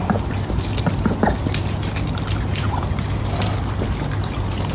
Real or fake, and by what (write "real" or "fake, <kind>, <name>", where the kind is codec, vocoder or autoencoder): real